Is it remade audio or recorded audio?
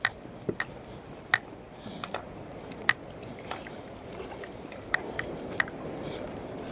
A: recorded